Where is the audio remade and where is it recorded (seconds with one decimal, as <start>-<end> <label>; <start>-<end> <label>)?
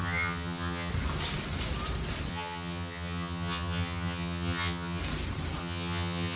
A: 0.0-0.9 remade; 0.9-2.3 recorded; 2.3-5.0 remade; 5.0-5.6 recorded; 5.6-6.4 remade